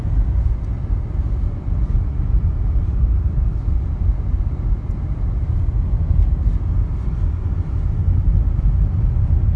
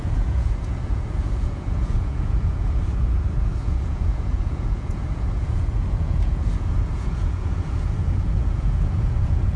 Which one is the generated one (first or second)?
second